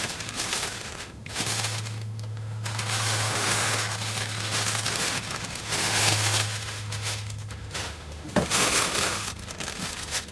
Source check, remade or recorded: remade